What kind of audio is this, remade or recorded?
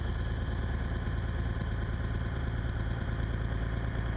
remade